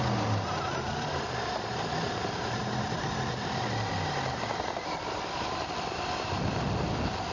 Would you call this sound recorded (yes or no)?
yes